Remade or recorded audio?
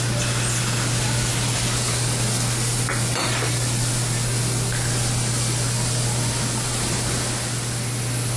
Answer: recorded